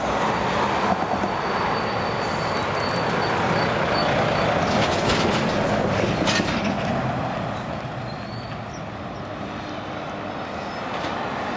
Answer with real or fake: real